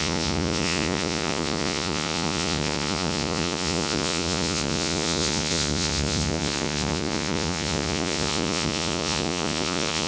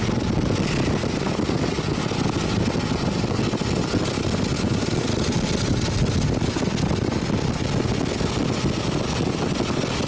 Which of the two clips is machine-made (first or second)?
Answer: first